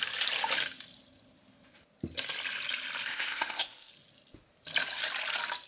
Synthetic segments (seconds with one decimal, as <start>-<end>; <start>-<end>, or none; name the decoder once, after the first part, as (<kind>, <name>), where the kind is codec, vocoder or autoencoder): 3.1-3.9 (codec, ZipCodec)